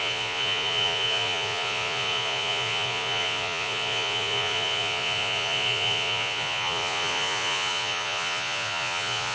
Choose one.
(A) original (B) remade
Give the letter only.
B